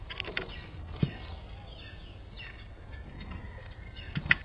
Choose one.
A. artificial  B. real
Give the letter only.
B